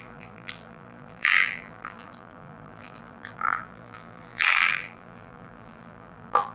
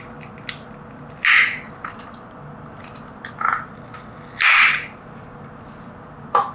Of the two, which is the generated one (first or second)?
first